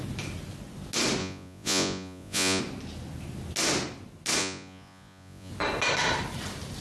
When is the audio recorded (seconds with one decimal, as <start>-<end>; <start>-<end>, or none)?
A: 0.0-1.2; 2.6-4.4; 5.5-6.8